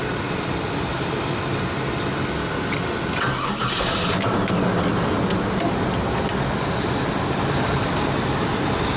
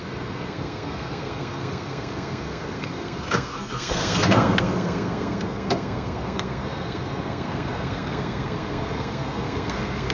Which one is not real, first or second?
second